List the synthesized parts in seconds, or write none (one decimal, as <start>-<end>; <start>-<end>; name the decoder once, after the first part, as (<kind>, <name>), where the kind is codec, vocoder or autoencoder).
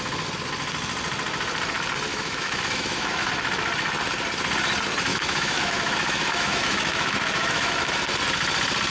2.1-3.3 (autoencoder, DAC-VAE); 5.1-7.7